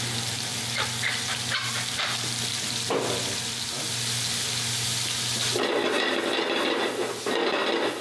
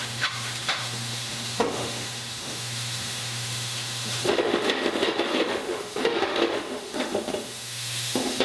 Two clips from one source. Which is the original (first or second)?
first